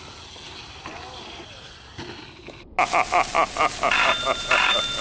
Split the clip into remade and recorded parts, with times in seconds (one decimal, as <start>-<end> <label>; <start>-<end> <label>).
0.0-0.6 recorded; 0.6-1.8 remade; 1.8-5.0 recorded

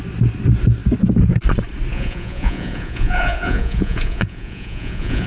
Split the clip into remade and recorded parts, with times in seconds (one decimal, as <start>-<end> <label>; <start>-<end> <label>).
0.0-1.9 recorded; 1.9-5.3 remade

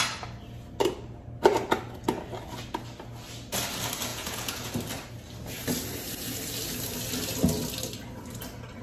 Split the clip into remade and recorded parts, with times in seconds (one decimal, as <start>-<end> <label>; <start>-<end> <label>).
0.0-4.1 recorded; 4.1-4.7 remade; 4.7-8.8 recorded

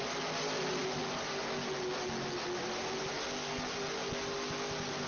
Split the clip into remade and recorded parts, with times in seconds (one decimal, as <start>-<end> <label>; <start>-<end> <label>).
0.0-5.1 recorded

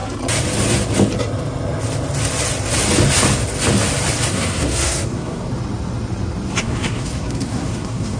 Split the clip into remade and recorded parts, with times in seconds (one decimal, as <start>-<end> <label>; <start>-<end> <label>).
0.0-4.3 recorded; 4.3-5.5 remade; 5.5-6.6 recorded; 6.6-8.2 remade

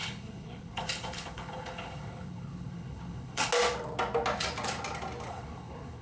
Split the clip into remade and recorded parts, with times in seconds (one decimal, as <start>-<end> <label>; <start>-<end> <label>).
0.0-3.5 remade; 3.5-5.3 recorded; 5.3-6.0 remade

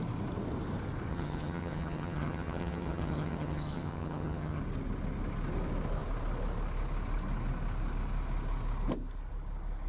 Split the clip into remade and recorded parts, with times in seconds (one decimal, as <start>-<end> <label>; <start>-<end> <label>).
0.0-1.1 recorded; 1.1-4.6 remade; 4.6-9.9 recorded

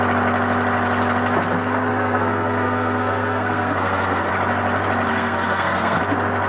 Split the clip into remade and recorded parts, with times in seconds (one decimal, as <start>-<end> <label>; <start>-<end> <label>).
0.0-1.9 recorded; 1.9-4.3 remade; 4.3-5.1 recorded; 5.1-6.0 remade; 6.0-6.5 recorded